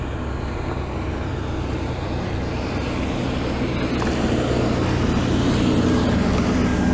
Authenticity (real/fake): real